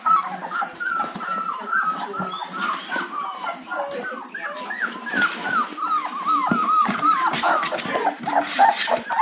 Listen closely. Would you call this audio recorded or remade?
recorded